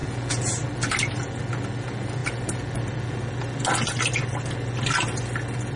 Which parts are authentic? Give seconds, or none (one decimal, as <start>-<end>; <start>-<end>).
0.0-5.8